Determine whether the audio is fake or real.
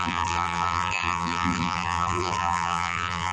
fake